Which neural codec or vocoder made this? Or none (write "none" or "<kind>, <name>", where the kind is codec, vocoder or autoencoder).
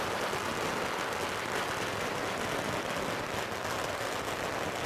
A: none